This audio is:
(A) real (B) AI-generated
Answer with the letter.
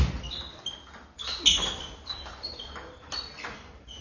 A